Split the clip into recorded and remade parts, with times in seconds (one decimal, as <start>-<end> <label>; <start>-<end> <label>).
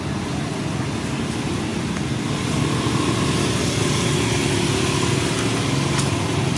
0.0-6.6 recorded